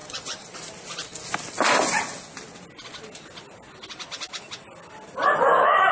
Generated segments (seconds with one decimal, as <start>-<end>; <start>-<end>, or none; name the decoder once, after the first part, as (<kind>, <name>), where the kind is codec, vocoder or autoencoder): 0.0-0.7 (vocoder, BigVGAN v2)